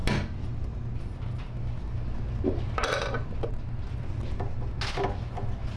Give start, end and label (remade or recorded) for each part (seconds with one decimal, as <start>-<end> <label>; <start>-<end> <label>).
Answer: 0.0-5.8 recorded